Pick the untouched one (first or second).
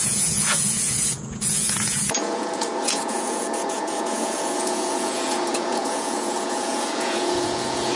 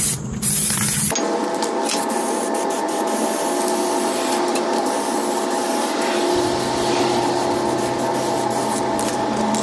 second